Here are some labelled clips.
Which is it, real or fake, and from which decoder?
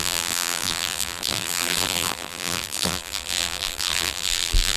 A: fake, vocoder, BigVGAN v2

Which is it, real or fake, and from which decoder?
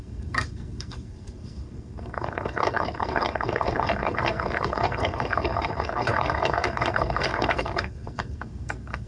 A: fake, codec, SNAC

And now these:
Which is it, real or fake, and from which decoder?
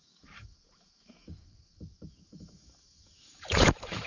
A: fake, autoencoder, DAC-VAE